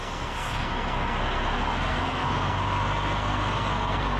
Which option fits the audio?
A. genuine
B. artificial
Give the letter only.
B